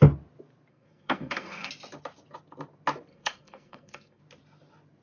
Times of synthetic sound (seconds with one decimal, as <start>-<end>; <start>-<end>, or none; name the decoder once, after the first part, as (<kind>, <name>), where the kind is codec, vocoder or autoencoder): 0.7-1.7 (codec, SNAC); 3.1-4.2